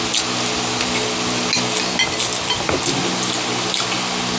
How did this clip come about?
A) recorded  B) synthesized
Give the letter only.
A